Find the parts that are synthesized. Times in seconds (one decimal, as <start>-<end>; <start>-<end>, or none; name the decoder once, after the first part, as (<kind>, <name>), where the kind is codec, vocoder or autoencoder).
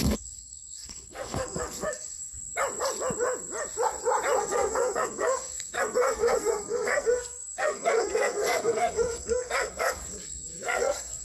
0.0-2.3 (codec, SNAC); 4.4-11.2